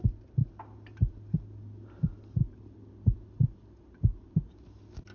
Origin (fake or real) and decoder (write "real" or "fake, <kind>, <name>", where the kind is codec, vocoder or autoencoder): real